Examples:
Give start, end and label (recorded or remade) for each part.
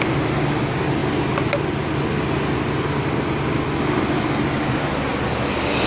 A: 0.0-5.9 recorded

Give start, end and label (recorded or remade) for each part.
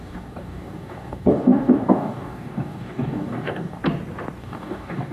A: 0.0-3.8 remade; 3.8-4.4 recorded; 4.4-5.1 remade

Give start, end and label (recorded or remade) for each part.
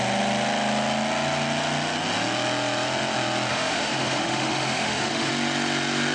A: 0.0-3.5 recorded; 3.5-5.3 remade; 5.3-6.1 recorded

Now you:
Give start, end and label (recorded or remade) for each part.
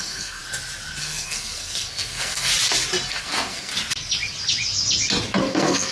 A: 0.0-0.4 remade; 0.4-1.0 recorded; 1.0-2.5 remade; 2.5-3.1 recorded; 3.1-3.7 remade; 3.7-5.4 recorded; 5.4-5.9 remade